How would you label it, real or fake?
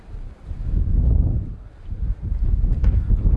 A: fake